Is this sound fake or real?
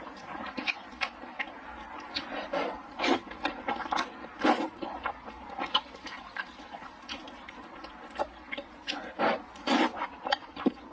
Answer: fake